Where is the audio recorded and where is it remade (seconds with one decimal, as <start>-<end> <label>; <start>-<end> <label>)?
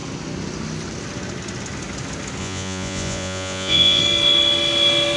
0.0-2.4 recorded; 2.4-4.0 remade; 4.0-5.2 recorded